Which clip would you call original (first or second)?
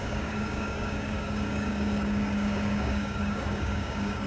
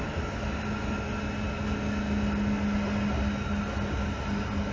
second